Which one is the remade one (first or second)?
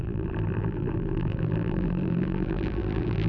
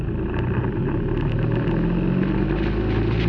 first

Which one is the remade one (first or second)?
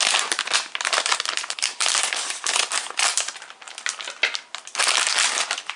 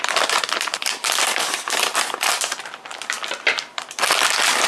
second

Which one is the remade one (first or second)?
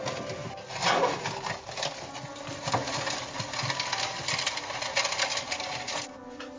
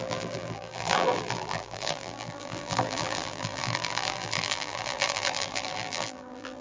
second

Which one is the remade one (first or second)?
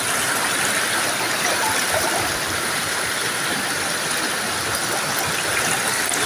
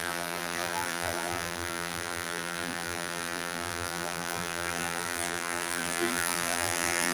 second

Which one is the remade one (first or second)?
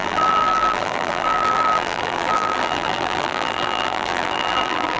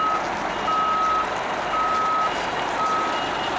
first